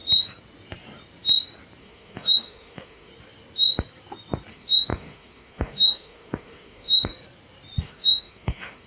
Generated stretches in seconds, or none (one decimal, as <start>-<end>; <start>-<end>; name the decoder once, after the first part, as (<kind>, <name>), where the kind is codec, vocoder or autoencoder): 1.8-3.1 (autoencoder, DAC-VAE); 4.5-7.1; 7.8-8.9